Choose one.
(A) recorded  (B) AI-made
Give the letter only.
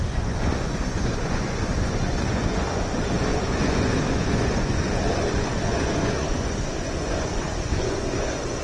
B